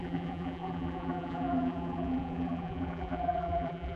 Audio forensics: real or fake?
fake